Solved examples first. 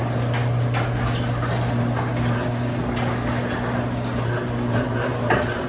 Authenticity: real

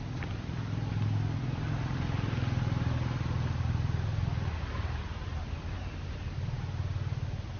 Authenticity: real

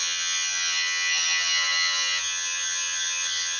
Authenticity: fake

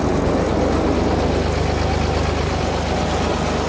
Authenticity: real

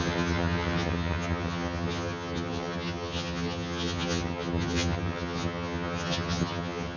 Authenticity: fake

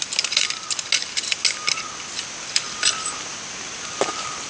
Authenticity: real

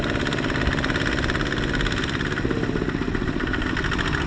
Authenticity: real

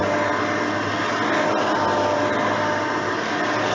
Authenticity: real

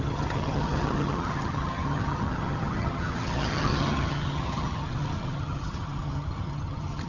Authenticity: fake